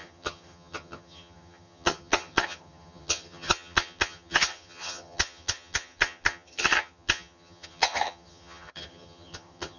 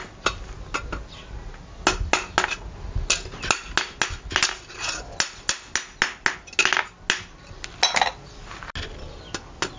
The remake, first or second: first